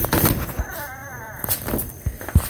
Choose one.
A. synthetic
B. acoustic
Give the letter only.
A